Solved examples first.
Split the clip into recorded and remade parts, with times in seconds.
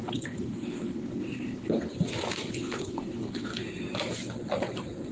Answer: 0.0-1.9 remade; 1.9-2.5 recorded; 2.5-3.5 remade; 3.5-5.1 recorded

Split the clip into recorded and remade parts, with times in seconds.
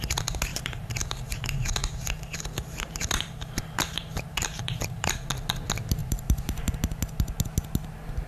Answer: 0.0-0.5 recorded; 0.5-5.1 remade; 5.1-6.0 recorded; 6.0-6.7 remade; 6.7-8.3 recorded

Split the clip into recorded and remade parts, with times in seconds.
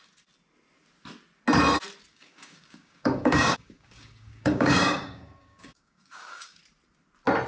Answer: 0.0-2.1 recorded; 2.1-6.6 remade; 6.6-7.5 recorded